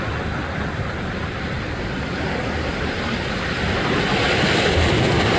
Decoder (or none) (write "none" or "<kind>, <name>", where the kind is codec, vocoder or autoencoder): vocoder, BigVGAN v2